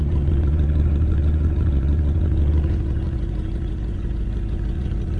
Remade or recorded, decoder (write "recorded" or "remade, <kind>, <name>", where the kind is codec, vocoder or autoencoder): remade, vocoder, Vocos